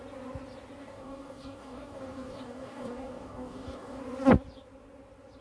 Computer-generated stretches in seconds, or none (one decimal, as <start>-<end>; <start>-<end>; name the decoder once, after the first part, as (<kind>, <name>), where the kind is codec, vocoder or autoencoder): 0.8-4.0 (codec, DAC)